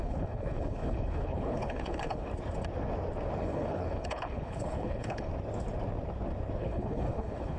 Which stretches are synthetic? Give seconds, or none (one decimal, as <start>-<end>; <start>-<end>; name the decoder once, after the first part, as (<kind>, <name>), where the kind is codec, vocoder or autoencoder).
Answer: 0.0-2.3 (codec, HILCodec); 3.4-5.3; 6.6-7.6